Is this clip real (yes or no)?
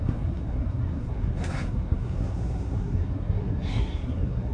no